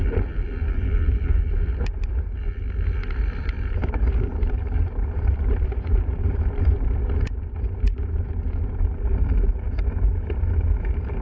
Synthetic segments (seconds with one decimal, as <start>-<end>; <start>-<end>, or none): 3.0-8.0